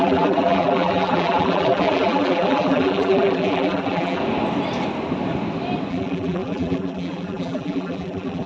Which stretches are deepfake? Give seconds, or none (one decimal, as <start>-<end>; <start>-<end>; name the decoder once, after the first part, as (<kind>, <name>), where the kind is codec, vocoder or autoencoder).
0.0-4.2 (vocoder, BigVGAN v2); 5.9-8.5